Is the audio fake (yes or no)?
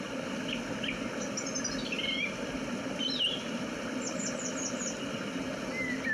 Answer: no